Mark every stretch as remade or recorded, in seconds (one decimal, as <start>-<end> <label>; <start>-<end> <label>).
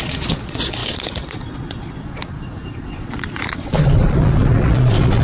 0.0-5.2 remade